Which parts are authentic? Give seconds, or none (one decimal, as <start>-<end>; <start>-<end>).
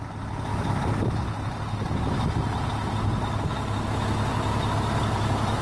0.0-5.6